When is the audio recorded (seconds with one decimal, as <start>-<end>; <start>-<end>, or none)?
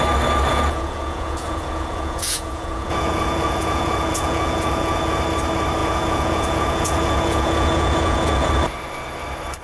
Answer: 0.0-0.5; 5.2-5.8; 8.5-9.6